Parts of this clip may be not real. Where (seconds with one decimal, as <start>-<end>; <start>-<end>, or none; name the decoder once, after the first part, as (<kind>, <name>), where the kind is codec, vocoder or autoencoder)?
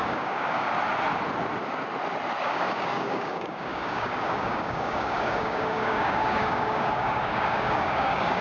0.0-0.7 (codec, DAC); 2.4-8.4